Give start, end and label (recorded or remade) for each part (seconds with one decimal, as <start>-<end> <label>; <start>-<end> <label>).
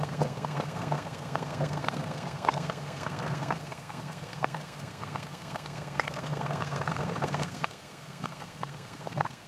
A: 0.0-9.5 remade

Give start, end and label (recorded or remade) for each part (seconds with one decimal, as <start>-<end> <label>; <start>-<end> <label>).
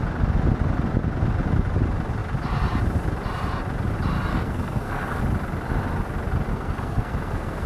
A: 0.0-4.3 recorded; 4.3-5.2 remade; 5.2-6.5 recorded; 6.5-7.7 remade